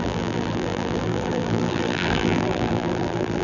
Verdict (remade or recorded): remade